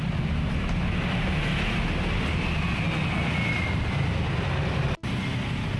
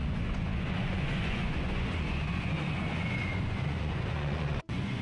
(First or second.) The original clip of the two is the first